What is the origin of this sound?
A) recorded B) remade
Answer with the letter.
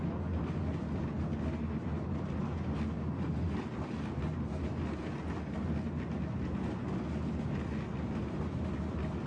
A